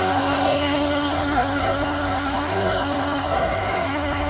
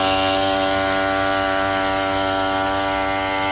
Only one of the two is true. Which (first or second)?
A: second